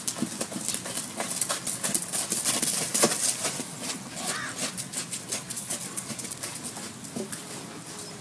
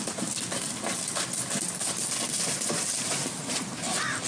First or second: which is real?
first